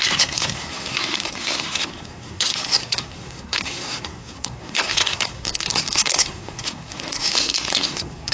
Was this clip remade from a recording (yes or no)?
yes